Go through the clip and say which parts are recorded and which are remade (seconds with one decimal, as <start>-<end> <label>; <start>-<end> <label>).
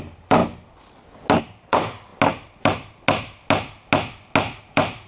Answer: 0.0-0.4 remade; 0.4-1.4 recorded; 1.4-2.1 remade; 2.1-4.6 recorded; 4.6-5.1 remade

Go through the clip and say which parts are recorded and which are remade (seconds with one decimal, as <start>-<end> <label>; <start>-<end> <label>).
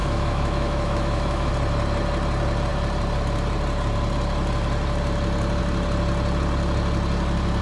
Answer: 0.0-1.5 remade; 1.5-7.6 recorded